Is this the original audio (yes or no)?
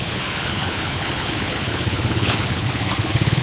no